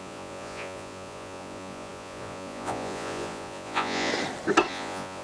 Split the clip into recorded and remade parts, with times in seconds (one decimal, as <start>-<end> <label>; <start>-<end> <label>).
0.0-4.1 remade; 4.1-4.7 recorded; 4.7-5.2 remade